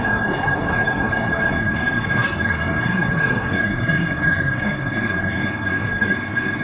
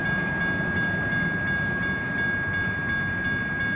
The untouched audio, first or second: second